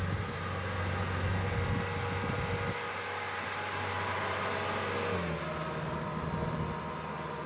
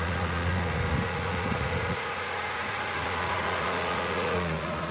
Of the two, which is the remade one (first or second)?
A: second